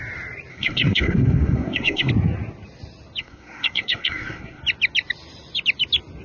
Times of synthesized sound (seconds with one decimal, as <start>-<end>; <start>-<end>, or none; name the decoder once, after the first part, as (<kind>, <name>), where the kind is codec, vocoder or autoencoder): 0.5-2.1 (codec, SNAC); 3.2-4.6